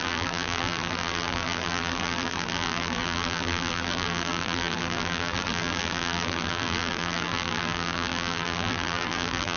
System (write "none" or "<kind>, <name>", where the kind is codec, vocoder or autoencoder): vocoder, BigVGAN v2